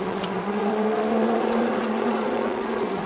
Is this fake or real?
fake